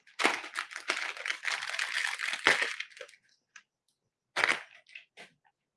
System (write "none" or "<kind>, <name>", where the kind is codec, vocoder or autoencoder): none